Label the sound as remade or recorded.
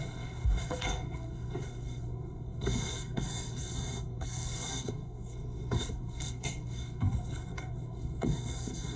remade